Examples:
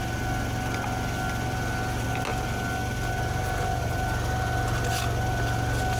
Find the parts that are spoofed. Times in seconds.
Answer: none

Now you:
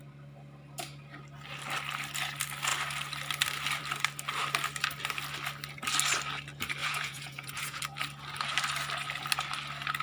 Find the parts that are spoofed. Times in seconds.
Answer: 6.8-7.8